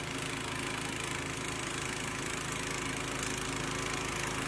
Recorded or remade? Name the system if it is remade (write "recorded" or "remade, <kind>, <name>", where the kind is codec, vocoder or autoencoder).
recorded